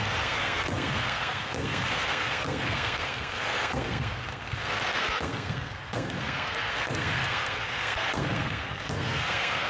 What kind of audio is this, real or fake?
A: fake